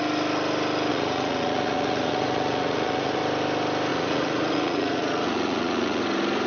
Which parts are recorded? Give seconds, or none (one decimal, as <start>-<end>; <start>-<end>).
0.0-0.9; 3.2-3.9; 6.0-6.5